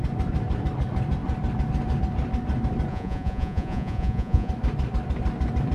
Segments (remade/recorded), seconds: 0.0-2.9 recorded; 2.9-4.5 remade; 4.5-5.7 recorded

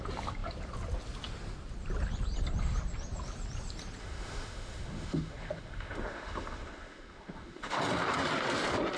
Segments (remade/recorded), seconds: 0.0-4.0 recorded; 4.0-7.8 remade; 7.8-9.0 recorded

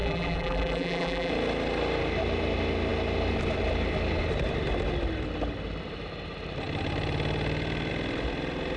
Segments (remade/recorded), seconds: 0.0-1.3 remade; 1.3-8.8 recorded

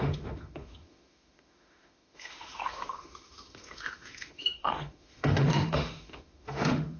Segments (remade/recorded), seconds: 0.0-7.0 remade

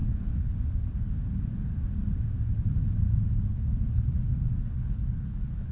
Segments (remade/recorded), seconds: 0.0-1.1 remade; 1.1-3.5 recorded; 3.5-5.7 remade

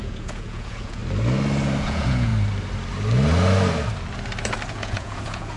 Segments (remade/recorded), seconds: 0.0-1.0 remade; 1.0-1.8 recorded; 1.8-2.3 remade; 2.3-4.7 recorded; 4.7-5.6 remade

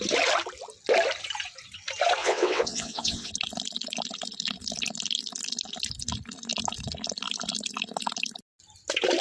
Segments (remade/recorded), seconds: 0.0-2.2 recorded; 2.2-3.3 remade; 3.3-9.2 recorded